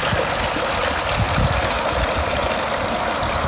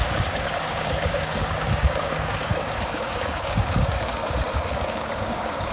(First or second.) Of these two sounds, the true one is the first